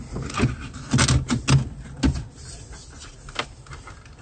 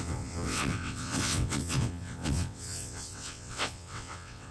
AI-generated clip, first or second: second